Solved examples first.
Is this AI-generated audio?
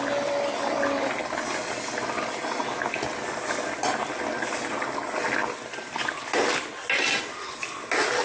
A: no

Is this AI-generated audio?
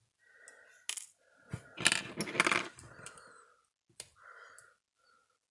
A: no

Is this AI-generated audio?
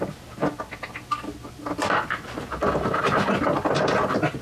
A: no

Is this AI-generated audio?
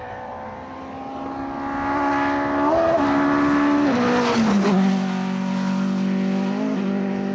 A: no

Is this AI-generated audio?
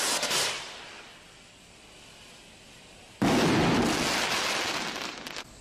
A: no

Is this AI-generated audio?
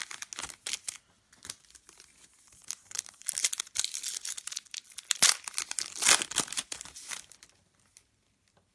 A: no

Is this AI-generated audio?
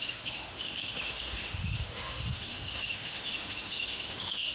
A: yes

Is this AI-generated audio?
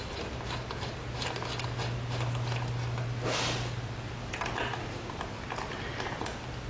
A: no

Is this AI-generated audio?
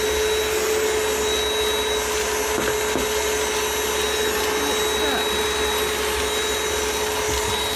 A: no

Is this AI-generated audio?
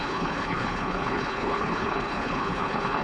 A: yes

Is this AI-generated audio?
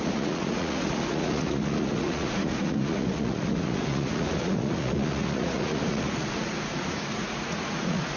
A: yes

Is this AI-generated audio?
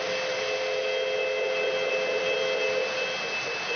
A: no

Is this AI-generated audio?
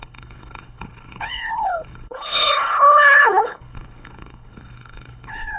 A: yes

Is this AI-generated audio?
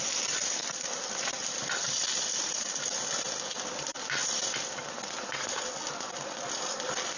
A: no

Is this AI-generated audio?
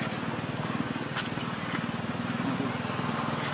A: no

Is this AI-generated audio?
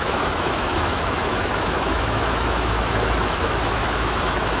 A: yes